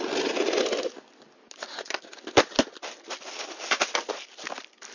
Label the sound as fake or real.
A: real